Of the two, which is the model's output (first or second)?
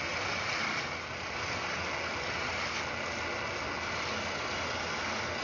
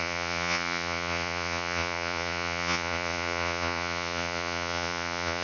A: second